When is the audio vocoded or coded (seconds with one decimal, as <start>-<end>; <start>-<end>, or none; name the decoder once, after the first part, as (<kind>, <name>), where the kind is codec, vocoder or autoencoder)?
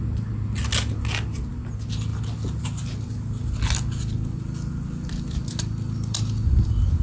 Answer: none